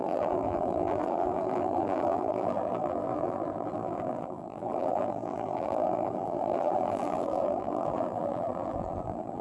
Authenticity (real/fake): fake